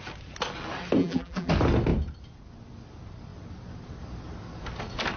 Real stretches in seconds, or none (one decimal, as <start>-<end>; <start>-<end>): 0.0-1.0; 1.5-5.2